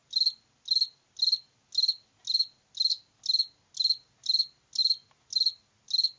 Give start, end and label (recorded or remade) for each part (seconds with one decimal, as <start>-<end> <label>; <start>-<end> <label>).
0.0-6.2 recorded